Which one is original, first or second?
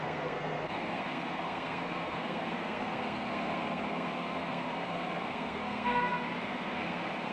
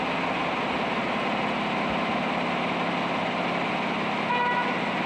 second